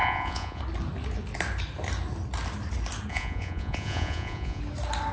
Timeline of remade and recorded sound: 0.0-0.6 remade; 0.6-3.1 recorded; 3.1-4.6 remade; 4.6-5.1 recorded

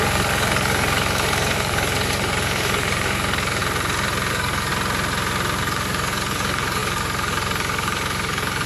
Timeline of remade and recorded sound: 0.0-3.6 remade; 3.6-4.3 recorded; 4.3-4.7 remade; 4.7-5.6 recorded; 5.6-8.7 remade

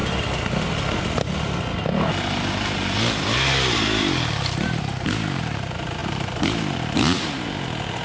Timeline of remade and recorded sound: 0.0-8.0 recorded

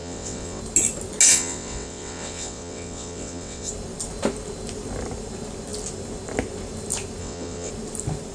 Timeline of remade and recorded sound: 0.0-0.6 remade; 0.6-1.3 recorded; 1.3-3.7 remade; 3.7-7.2 recorded; 7.2-7.7 remade; 7.7-8.3 recorded

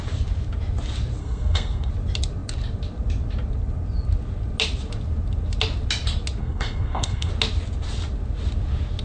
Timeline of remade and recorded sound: 0.0-1.2 recorded; 1.2-1.9 remade; 1.9-6.4 recorded; 6.4-7.3 remade; 7.3-9.0 recorded

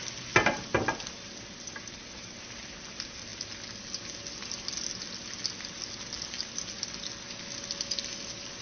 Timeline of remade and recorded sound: 0.0-8.6 recorded

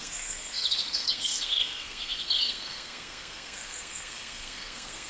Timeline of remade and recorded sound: 0.0-5.1 remade